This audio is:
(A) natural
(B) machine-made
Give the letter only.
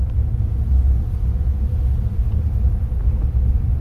A